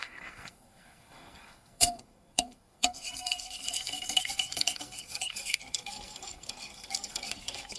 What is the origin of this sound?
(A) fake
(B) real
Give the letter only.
A